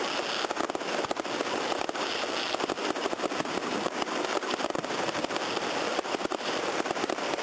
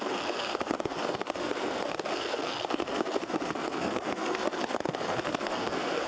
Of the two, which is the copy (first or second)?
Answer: second